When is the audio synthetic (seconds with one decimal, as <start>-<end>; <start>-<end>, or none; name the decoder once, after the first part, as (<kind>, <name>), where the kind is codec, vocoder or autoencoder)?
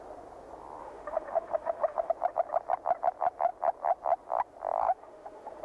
0.8-2.1 (autoencoder, DAC-VAE); 4.8-5.6